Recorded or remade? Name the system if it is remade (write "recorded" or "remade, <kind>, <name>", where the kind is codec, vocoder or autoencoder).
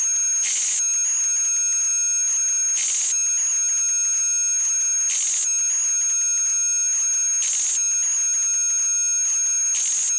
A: recorded